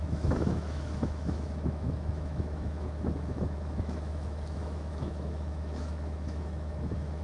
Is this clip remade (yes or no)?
yes